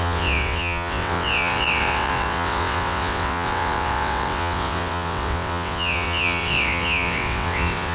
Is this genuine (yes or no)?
no